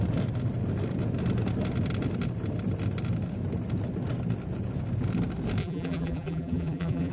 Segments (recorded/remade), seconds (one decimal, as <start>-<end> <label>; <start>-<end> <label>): 0.0-5.6 recorded; 5.6-7.1 remade